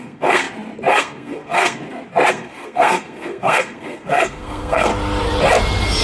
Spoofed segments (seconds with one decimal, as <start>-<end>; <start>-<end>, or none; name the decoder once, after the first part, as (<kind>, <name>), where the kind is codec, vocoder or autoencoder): 0.0-0.4 (codec, SNAC); 0.9-1.8; 2.3-4.9